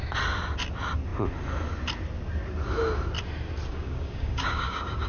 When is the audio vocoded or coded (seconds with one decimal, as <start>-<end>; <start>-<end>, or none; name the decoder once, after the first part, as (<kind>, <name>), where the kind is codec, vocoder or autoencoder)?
3.7-5.1 (codec, DAC)